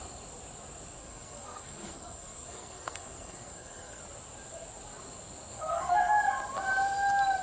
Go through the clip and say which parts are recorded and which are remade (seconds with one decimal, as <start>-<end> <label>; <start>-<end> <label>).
0.0-1.0 recorded; 1.0-4.0 remade; 4.0-5.5 recorded; 5.5-6.1 remade; 6.1-7.4 recorded